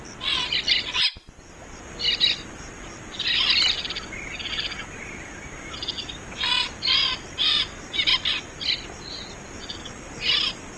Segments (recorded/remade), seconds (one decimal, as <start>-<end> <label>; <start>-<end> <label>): 0.0-10.8 recorded